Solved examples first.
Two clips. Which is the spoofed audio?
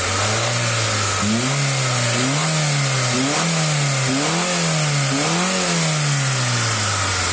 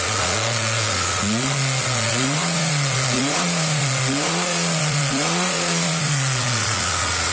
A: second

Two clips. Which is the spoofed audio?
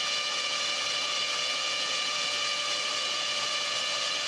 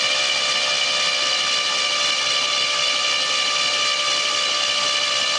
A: first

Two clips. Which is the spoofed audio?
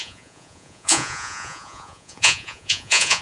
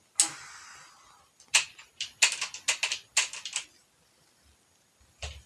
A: first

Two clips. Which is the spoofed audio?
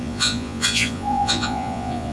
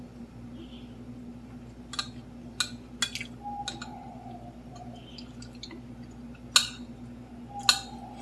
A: first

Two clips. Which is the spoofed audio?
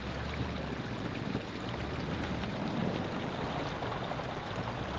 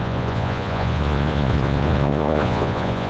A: second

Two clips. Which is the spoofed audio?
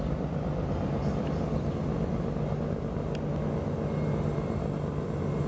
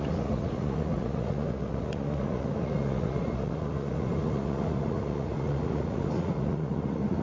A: second